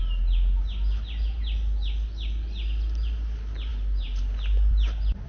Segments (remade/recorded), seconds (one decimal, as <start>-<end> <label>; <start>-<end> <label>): 0.0-5.3 recorded

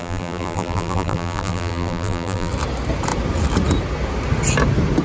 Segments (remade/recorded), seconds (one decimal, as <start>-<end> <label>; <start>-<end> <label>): 0.0-2.5 remade; 2.5-5.0 recorded

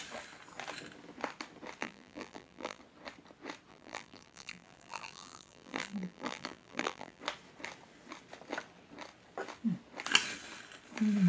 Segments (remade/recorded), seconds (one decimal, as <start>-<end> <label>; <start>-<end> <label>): 0.0-1.8 recorded; 1.8-2.8 remade; 2.8-3.7 recorded; 3.7-7.2 remade; 7.2-11.3 recorded

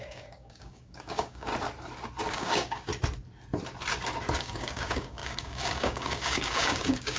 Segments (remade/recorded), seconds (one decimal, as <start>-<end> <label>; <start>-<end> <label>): 0.0-1.5 remade; 1.5-2.3 recorded; 2.3-2.9 remade; 2.9-4.4 recorded; 4.4-7.2 remade

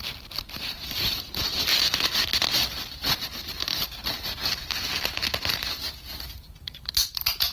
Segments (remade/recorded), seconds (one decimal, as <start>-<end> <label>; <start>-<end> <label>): 0.0-1.7 remade; 1.7-2.9 recorded; 2.9-4.4 remade; 4.4-5.4 recorded; 5.4-7.5 remade

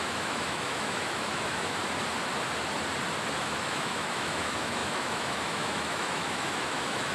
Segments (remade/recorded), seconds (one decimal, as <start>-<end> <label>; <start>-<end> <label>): 0.0-1.8 remade; 1.8-3.4 recorded; 3.4-7.1 remade